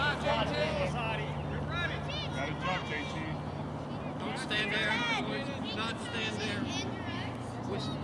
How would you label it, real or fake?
real